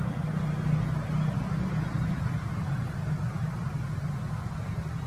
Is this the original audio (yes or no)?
yes